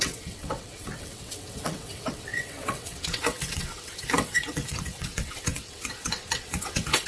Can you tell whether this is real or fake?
fake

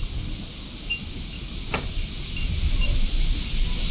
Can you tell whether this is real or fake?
real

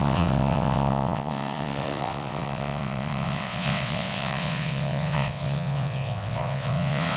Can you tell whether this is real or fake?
fake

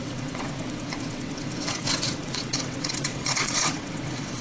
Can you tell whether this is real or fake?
fake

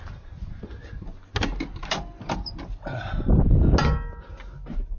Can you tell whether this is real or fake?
real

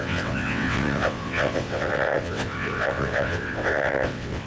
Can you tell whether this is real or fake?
fake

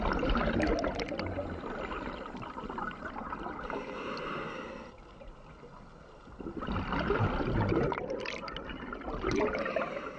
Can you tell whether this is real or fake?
real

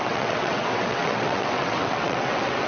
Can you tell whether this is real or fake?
fake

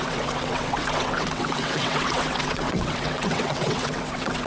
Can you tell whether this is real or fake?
fake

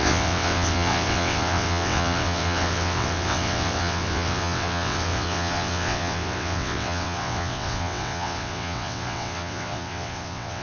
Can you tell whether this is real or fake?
fake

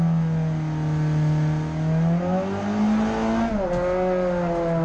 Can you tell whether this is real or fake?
real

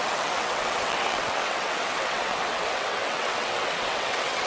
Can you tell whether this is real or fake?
fake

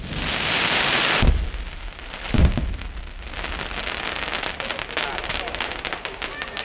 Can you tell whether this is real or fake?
real